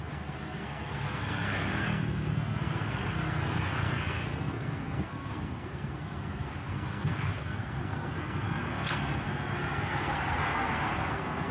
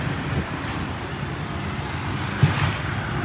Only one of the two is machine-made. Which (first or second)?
first